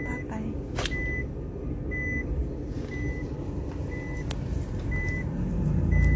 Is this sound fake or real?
real